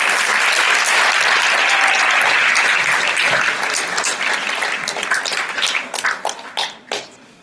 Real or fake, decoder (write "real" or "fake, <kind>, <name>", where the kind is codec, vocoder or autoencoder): real